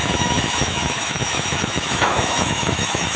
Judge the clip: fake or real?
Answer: fake